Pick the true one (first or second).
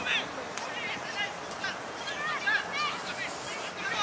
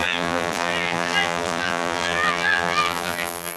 first